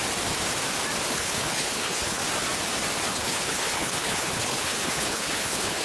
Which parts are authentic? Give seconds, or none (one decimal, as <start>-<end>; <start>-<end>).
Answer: 0.0-1.1; 2.2-3.1